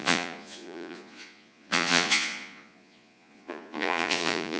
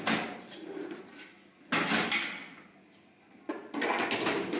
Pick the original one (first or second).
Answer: second